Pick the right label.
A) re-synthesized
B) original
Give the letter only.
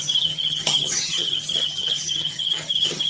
A